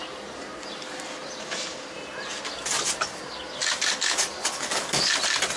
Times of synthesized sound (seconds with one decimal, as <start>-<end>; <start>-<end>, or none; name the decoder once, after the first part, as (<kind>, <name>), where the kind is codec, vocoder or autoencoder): 3.6-5.1 (codec, DAC)